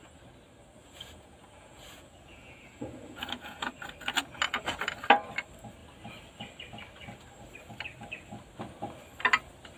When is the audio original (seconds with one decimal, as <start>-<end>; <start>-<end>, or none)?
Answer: 0.0-0.8; 3.7-9.8